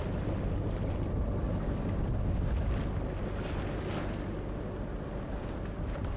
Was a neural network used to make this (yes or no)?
no